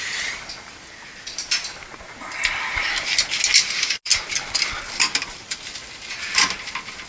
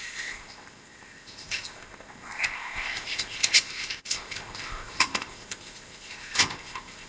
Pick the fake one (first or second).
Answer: second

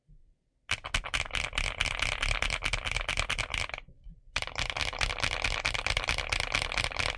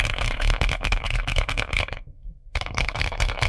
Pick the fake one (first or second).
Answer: second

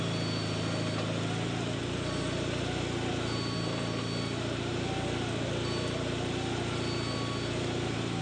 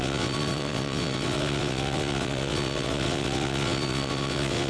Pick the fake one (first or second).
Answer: second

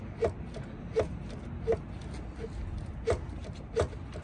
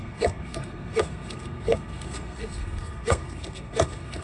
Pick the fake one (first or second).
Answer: second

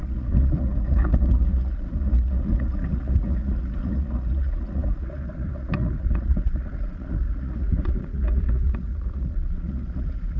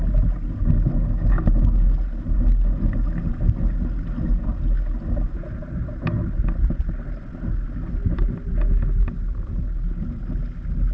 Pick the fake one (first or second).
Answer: first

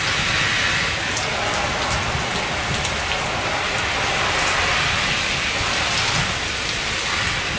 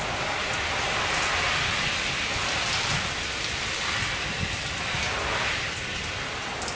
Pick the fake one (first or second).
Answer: first